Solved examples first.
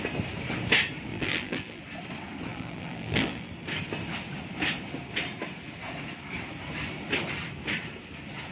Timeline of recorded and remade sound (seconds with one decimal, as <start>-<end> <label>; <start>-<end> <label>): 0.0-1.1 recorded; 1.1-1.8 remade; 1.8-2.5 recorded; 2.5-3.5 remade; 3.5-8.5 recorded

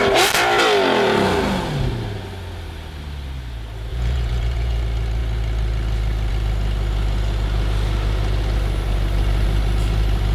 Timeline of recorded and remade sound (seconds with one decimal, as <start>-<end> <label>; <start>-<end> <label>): 0.0-3.9 recorded; 3.9-4.8 remade; 4.8-10.3 recorded

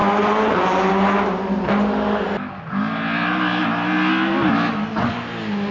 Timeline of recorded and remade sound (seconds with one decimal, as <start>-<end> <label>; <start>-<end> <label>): 0.0-5.7 recorded

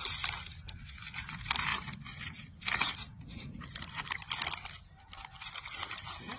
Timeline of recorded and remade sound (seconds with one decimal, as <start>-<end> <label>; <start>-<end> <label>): 0.0-6.4 recorded